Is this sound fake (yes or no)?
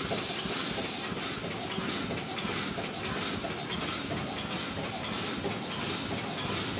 no